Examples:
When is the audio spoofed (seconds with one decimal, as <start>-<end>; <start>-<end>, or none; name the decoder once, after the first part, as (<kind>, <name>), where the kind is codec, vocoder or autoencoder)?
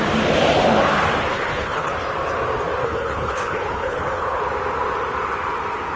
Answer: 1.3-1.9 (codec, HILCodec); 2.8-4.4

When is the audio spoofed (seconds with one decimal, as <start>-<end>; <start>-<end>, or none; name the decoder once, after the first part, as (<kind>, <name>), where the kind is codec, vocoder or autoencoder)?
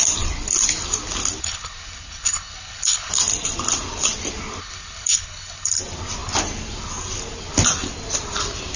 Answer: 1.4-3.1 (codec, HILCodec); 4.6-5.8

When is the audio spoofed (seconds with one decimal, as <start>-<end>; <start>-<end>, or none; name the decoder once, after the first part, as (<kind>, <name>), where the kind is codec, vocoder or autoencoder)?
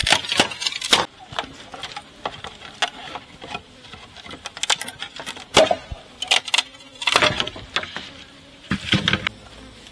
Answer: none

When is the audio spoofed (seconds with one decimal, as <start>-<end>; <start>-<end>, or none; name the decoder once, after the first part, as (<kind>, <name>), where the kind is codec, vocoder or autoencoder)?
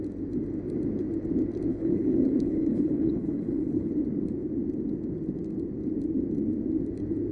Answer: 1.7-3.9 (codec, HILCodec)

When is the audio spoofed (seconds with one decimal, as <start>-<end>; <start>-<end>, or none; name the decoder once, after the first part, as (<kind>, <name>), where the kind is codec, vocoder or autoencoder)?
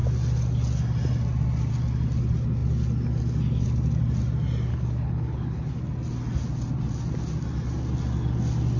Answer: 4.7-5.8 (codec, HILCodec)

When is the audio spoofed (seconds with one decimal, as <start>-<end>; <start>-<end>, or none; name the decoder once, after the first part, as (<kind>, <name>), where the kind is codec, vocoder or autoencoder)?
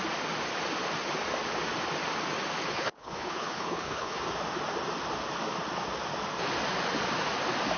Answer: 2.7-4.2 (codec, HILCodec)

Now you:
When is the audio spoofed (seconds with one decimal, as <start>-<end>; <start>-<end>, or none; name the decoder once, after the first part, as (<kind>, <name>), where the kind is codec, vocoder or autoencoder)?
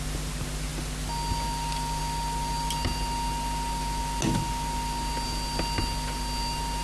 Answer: none